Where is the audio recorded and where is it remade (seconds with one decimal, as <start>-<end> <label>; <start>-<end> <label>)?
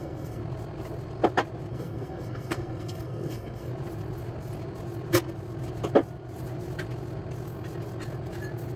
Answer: 0.0-0.4 remade; 0.4-1.7 recorded; 1.7-3.7 remade; 3.7-8.8 recorded